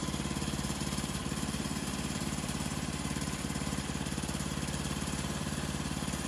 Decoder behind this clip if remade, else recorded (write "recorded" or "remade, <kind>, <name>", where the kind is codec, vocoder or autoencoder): remade, vocoder, BigVGAN v2